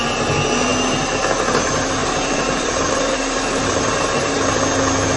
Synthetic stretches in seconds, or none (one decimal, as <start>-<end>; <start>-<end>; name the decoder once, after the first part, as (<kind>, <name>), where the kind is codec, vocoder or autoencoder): 2.0-4.6 (vocoder, BigVGAN v2)